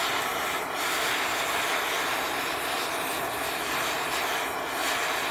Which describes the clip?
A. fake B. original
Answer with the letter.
B